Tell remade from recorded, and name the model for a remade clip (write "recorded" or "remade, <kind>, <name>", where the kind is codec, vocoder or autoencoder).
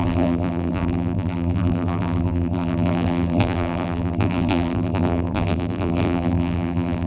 remade, vocoder, BigVGAN v2